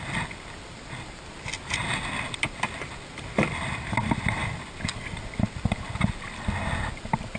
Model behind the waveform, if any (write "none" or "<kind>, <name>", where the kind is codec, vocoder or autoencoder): none